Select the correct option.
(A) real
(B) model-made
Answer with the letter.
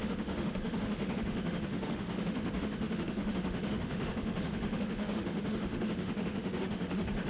B